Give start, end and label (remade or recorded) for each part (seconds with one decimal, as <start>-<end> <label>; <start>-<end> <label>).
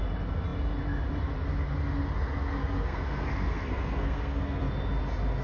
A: 0.0-2.6 recorded; 2.6-4.7 remade; 4.7-5.4 recorded